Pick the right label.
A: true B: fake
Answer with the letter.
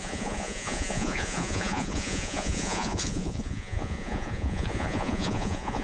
B